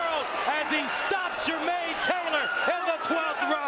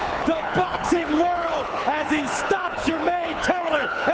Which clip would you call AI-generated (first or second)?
second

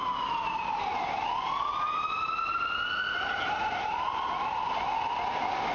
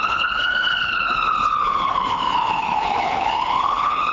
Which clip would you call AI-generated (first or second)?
second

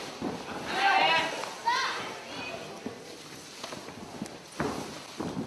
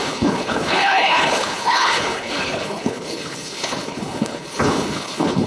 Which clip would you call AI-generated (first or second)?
second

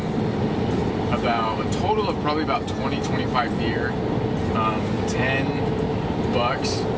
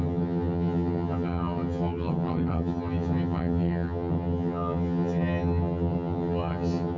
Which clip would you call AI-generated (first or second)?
second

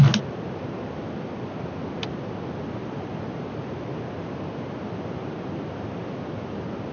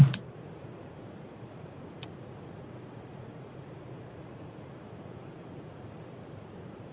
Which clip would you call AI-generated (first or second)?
second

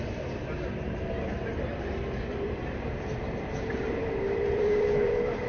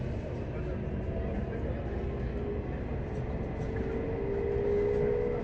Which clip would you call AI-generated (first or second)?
first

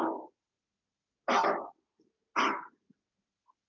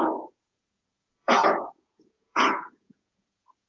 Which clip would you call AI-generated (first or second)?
second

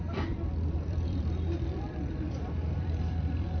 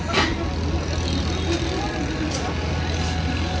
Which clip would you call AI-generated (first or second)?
first